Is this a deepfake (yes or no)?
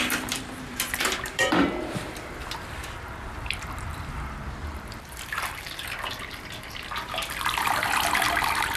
yes